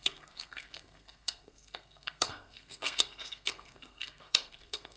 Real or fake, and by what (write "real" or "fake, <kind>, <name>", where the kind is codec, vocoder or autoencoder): fake, codec, SNAC